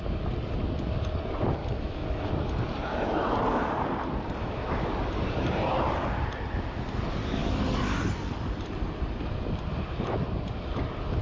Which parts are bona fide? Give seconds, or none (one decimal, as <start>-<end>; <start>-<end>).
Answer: 0.0-1.6; 2.3-4.4; 4.9-11.2